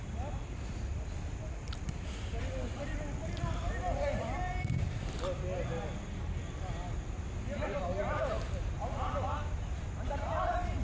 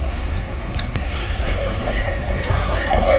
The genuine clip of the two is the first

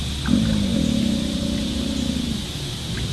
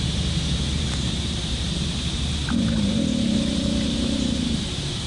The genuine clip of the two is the first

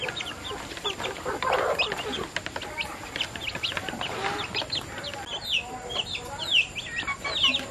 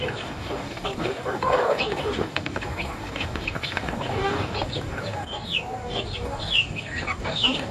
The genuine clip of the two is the first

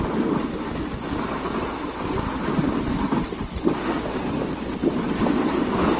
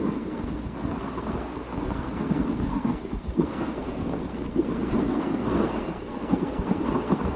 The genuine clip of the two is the first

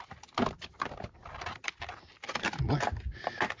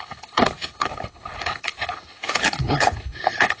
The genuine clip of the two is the first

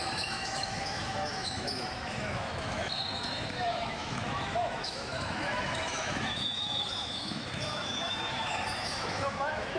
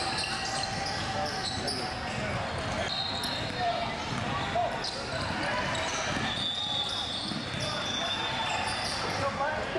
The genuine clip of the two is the second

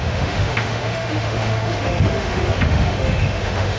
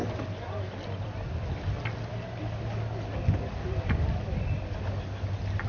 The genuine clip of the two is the second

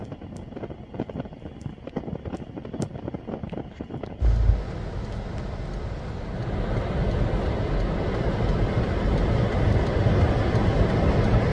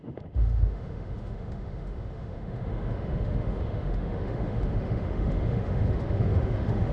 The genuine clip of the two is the first